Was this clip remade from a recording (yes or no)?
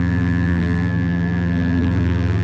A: yes